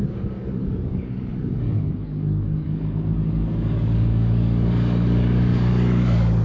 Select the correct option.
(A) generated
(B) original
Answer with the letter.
A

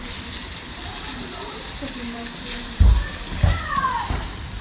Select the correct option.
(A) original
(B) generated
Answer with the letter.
B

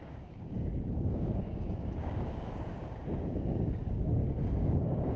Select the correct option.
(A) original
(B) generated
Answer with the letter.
B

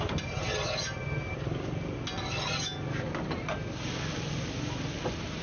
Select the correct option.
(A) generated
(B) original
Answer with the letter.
B